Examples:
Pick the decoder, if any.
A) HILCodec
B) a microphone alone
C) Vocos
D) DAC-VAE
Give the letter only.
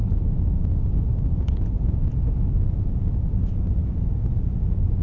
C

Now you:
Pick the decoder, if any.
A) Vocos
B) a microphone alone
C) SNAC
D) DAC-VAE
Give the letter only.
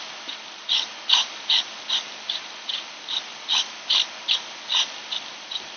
B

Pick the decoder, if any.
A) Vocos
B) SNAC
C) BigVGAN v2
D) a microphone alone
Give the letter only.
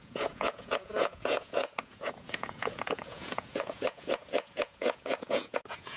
A